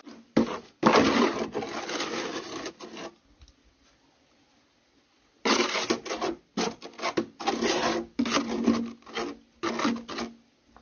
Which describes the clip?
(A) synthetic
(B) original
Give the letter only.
B